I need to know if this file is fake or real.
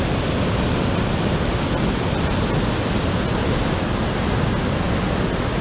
real